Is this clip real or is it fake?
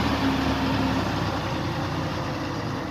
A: real